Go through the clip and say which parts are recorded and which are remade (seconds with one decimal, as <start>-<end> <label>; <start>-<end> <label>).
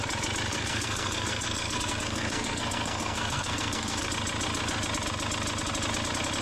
0.0-0.5 recorded; 0.5-4.1 remade; 4.1-6.4 recorded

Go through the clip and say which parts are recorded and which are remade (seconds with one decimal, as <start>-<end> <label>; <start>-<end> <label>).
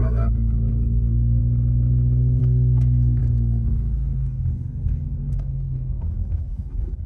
0.0-1.4 remade; 1.4-2.4 recorded; 2.4-7.1 remade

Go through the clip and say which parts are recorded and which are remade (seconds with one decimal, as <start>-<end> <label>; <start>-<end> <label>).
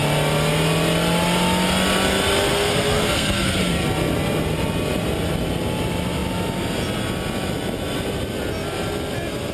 0.0-2.5 recorded; 2.5-3.6 remade; 3.6-9.5 recorded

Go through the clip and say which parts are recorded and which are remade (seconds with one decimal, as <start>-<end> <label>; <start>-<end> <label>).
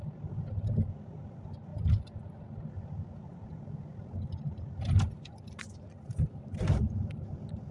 0.0-7.7 recorded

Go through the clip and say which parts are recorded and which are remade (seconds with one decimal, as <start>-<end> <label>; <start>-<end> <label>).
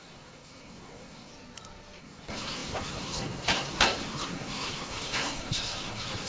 0.0-1.3 remade; 1.3-2.0 recorded; 2.0-6.3 remade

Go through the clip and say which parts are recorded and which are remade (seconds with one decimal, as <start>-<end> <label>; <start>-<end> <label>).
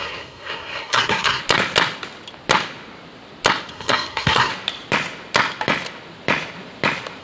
0.0-1.4 remade; 1.4-3.7 recorded; 3.7-4.5 remade; 4.5-7.2 recorded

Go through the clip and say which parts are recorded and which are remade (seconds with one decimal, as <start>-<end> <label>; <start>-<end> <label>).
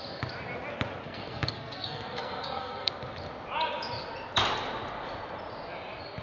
0.0-1.0 recorded; 1.0-2.9 remade; 2.9-6.2 recorded